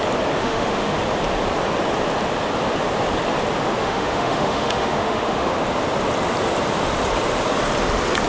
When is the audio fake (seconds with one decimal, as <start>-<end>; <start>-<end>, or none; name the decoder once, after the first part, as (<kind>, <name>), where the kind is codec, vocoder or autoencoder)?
0.4-1.0 (autoencoder, DAC-VAE); 3.8-5.5

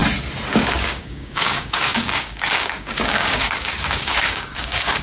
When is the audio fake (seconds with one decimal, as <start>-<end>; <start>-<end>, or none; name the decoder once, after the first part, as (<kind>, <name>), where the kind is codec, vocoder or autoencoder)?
0.5-5.0 (codec, DAC)

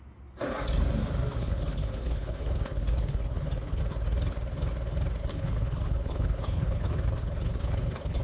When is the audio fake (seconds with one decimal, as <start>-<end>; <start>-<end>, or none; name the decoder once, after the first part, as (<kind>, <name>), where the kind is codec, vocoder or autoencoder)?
1.4-3.8 (codec, HILCodec); 5.2-8.2